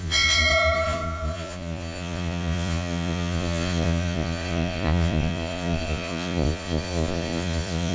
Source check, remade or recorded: remade